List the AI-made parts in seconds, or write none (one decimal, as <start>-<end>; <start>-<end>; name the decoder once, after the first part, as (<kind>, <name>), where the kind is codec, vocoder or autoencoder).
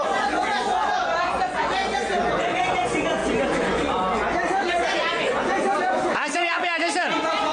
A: 0.0-7.5 (vocoder, Vocos)